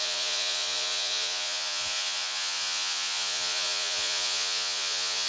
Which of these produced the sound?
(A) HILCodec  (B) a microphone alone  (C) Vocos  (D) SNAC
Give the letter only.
C